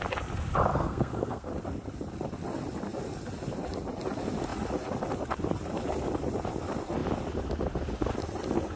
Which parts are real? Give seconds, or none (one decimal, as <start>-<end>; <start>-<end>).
0.0-0.7; 1.5-8.8